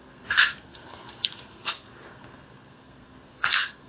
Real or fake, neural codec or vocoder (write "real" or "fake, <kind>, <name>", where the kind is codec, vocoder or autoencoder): fake, codec, SNAC